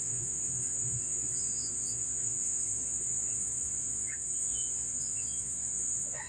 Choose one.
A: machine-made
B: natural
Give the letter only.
A